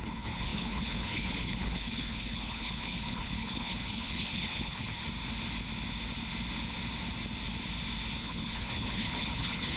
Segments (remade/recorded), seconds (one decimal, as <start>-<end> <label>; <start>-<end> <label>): 0.0-5.0 remade; 5.0-8.2 recorded; 8.2-9.8 remade